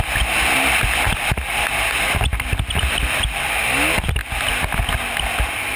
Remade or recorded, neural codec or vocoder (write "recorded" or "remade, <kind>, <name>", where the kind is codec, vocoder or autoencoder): recorded